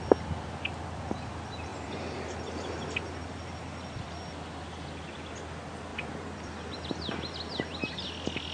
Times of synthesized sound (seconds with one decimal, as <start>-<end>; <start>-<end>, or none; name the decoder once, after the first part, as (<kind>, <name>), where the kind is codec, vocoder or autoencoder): 1.7-2.3 (vocoder, BigVGAN v2); 5.9-6.7